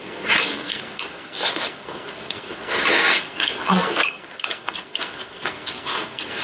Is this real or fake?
fake